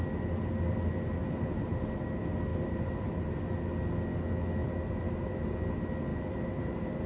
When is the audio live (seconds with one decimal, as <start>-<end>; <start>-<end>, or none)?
0.0-1.2; 1.8-2.5; 3.4-4.6; 5.5-6.1